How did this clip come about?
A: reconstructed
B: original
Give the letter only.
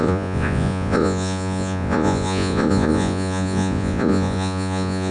A